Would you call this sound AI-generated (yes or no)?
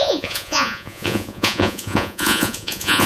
yes